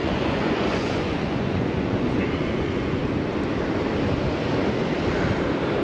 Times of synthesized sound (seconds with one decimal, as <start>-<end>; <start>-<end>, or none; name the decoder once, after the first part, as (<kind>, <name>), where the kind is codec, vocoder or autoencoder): 0.0-3.0 (vocoder, Vocos)